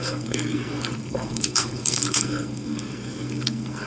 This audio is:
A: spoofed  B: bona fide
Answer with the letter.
A